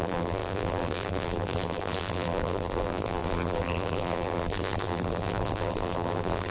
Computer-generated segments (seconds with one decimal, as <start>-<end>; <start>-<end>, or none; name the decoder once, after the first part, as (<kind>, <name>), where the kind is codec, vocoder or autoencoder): 0.0-6.5 (vocoder, BigVGAN v2)